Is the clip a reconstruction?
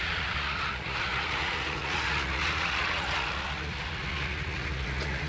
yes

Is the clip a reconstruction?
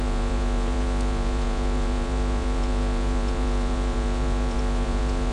yes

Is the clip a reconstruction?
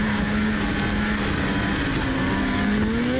no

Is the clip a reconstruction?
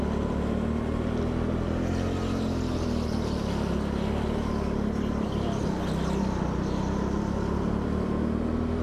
no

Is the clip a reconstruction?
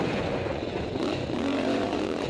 yes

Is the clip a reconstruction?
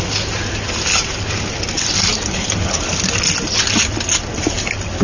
no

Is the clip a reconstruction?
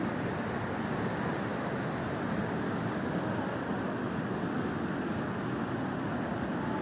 no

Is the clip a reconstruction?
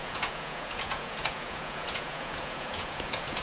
yes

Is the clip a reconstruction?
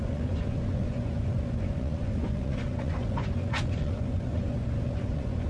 yes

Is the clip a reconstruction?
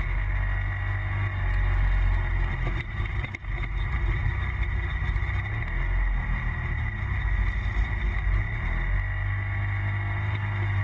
no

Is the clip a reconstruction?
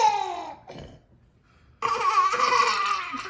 no